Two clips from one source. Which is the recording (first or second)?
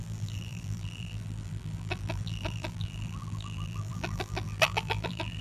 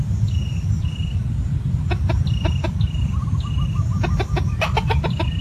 second